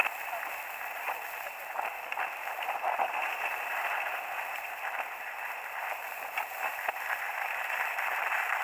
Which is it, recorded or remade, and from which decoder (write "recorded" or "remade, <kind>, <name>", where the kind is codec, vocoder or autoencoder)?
recorded